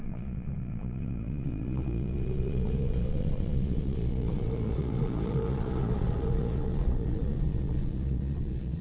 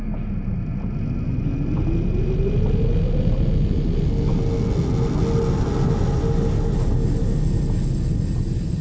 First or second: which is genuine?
second